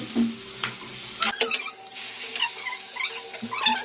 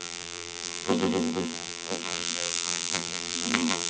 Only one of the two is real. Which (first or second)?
first